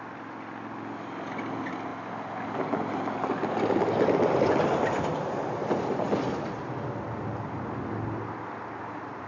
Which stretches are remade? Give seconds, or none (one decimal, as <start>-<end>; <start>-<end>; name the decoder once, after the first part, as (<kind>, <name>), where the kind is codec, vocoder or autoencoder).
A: none